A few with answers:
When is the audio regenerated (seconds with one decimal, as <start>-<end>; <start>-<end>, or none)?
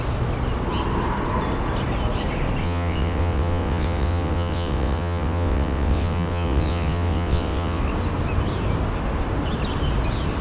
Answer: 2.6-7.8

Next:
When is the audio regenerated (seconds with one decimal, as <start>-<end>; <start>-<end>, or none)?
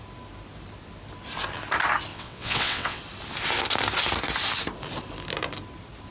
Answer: 2.1-3.0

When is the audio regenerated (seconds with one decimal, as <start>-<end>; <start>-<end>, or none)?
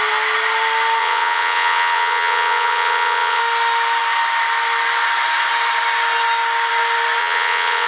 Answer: 1.0-3.4; 7.2-7.9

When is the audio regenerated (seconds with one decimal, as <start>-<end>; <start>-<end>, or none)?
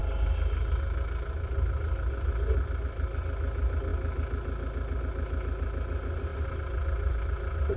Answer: none